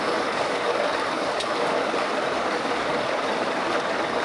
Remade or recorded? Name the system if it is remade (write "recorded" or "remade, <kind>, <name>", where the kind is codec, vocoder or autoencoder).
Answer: remade, codec, DAC